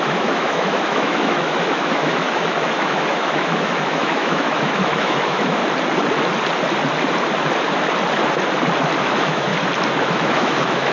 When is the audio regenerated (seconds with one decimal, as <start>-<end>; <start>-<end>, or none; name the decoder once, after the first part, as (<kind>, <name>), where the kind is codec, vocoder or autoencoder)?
0.0-5.6 (autoencoder, DAC-VAE); 9.0-9.5; 10.0-10.9